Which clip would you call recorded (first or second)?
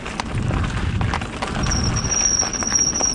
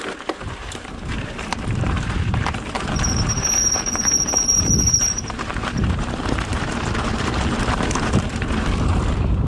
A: first